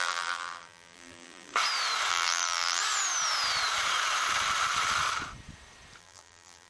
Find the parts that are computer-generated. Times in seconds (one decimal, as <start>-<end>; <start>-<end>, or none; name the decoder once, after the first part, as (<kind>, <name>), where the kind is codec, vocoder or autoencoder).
0.0-1.5 (vocoder, BigVGAN v2); 2.1-2.8; 6.0-6.7